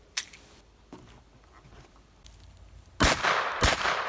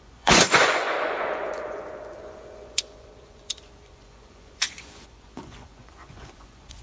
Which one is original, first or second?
first